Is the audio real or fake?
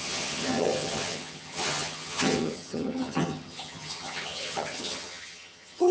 fake